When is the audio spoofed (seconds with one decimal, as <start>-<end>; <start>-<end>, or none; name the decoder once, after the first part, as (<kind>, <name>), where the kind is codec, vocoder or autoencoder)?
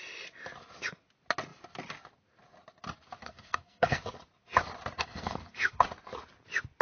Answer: 3.2-4.0 (codec, SNAC); 5.0-5.8